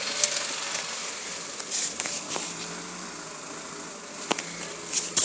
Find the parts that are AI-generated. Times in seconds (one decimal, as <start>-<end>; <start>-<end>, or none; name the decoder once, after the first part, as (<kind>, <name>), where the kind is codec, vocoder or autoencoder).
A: none

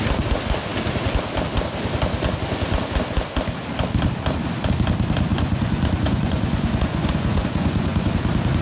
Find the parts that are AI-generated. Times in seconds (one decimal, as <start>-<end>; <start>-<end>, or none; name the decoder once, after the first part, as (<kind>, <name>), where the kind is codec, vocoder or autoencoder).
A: 5.3-8.1 (vocoder, Vocos)

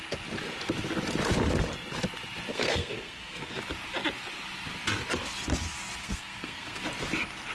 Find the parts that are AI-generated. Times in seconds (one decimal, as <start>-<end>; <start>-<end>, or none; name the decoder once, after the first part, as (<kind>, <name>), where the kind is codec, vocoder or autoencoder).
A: 2.5-3.6 (codec, SNAC); 6.0-6.8

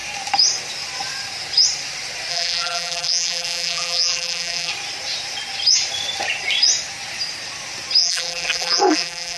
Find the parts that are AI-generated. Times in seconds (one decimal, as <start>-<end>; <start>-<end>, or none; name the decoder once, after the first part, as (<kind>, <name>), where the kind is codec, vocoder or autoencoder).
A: 2.3-4.7 (vocoder, BigVGAN v2); 8.0-9.4

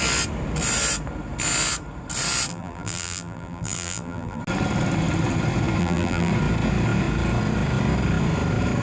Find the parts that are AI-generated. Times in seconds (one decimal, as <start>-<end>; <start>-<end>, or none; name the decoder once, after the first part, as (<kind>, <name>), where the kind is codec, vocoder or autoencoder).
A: 2.5-4.4 (vocoder, BigVGAN v2); 5.8-6.3

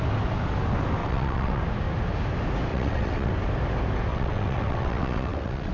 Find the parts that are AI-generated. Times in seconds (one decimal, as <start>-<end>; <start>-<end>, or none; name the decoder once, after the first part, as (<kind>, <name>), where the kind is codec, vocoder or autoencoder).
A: 1.0-1.6 (vocoder, WaveNeXt); 2.7-3.3; 4.1-5.7

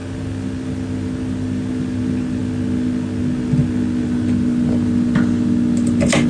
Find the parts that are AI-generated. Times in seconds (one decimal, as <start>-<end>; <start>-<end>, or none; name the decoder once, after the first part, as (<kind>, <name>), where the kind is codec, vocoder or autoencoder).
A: none